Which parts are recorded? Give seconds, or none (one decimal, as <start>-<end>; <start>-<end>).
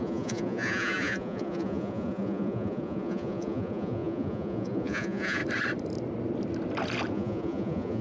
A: 5.4-7.1